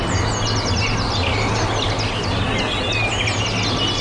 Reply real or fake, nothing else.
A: real